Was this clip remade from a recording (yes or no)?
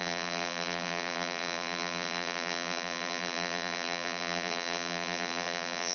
yes